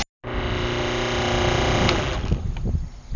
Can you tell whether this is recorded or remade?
recorded